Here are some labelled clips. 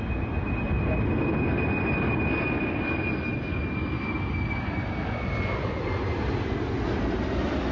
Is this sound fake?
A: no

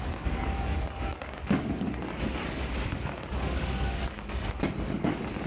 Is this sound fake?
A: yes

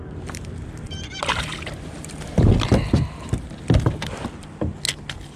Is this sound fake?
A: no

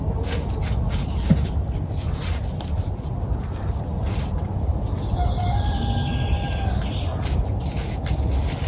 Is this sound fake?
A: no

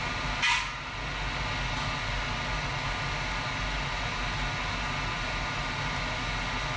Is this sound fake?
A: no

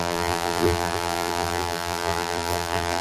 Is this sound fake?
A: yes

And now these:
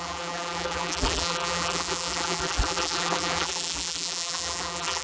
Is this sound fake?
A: yes